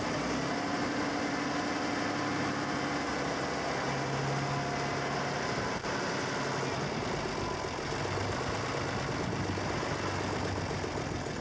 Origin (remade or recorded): recorded